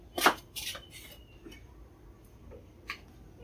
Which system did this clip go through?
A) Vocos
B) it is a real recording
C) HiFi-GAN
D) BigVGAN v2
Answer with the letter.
B